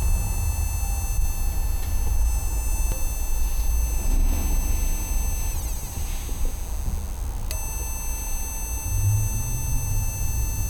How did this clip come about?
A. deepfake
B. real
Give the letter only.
B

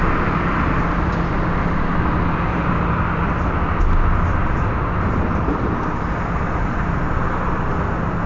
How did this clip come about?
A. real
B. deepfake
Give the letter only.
A